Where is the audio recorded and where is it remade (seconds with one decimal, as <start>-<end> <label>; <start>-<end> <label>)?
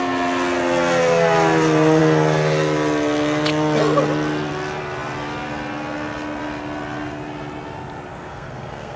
0.0-8.1 recorded; 8.1-9.0 remade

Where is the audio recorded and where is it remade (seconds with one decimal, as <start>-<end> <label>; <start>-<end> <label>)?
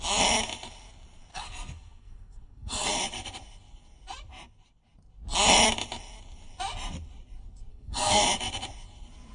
0.0-1.3 recorded; 1.3-2.9 remade; 2.9-7.7 recorded; 7.7-8.2 remade; 8.2-9.3 recorded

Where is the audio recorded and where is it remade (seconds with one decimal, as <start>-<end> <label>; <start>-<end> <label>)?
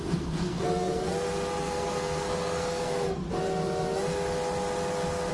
0.0-1.1 remade; 1.1-1.6 recorded; 1.6-3.2 remade; 3.2-5.3 recorded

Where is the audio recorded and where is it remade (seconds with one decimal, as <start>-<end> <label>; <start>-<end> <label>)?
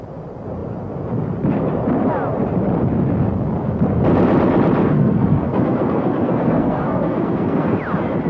0.0-4.8 recorded; 4.8-7.8 remade; 7.8-8.3 recorded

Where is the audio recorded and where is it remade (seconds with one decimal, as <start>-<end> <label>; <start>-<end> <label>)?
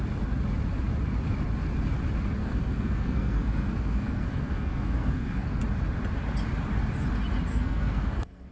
0.0-2.4 recorded; 2.4-5.6 remade; 5.6-7.5 recorded; 7.5-8.5 remade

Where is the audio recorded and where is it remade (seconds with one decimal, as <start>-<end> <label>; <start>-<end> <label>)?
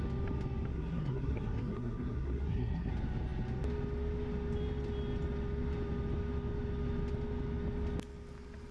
0.0-0.7 recorded; 0.7-2.9 remade; 2.9-8.7 recorded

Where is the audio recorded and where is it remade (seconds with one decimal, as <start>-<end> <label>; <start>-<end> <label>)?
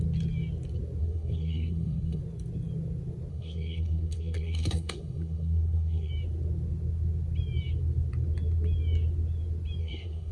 0.0-1.0 recorded; 1.0-2.2 remade; 2.2-3.3 recorded; 3.3-6.1 remade; 6.1-9.8 recorded; 9.8-10.3 remade